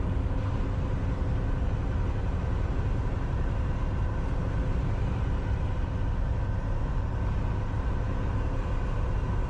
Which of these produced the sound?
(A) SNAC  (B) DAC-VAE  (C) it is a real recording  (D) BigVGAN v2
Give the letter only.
C